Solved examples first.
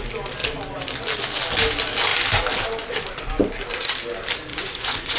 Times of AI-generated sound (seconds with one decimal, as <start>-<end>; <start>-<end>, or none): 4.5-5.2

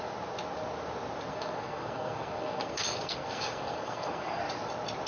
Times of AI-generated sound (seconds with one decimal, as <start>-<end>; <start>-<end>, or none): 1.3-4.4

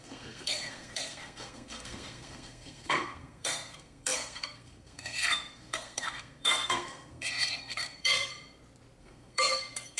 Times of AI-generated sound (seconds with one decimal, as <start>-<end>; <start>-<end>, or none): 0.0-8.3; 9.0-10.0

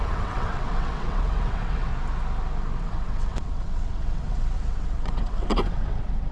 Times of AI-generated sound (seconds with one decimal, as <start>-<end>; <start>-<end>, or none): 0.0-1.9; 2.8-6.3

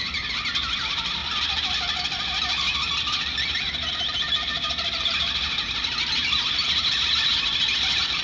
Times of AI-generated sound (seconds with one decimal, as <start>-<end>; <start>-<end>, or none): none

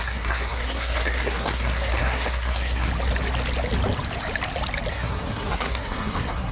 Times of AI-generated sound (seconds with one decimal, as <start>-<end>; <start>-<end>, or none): 0.0-2.9; 4.9-6.5

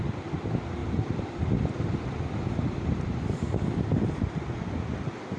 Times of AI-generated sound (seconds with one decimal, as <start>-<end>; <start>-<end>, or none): 0.8-4.0

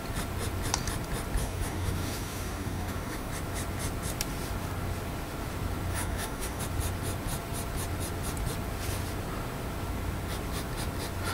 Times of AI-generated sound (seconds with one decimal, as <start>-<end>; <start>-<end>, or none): 1.4-3.3; 5.9-6.6